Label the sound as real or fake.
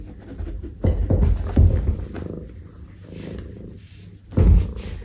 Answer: real